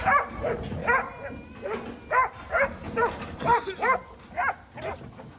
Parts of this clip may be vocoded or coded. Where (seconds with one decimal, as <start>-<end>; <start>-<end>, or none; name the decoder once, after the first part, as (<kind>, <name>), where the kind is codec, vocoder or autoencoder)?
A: 0.0-0.8 (vocoder, BigVGAN v2); 2.4-4.0; 4.9-5.4